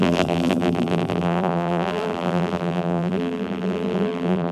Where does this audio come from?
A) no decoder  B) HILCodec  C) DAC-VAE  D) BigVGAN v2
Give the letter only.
D